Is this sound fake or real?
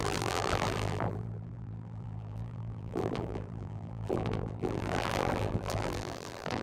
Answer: fake